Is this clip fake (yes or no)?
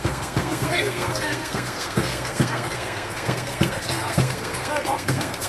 yes